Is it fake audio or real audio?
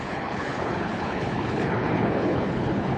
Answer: fake